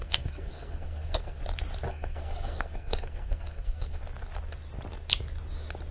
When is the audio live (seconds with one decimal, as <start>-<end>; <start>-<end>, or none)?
1.4-1.9; 4.0-5.9